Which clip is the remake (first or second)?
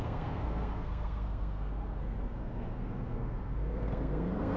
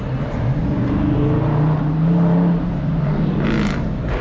first